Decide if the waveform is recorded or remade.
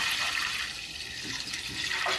recorded